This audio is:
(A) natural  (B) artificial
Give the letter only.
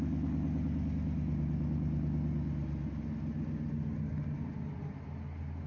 A